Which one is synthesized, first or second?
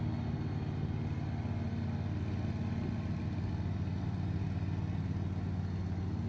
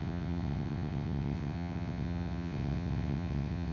second